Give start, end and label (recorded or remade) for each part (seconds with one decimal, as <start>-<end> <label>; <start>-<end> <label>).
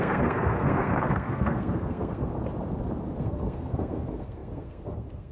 0.0-2.3 remade; 2.3-3.2 recorded; 3.2-5.3 remade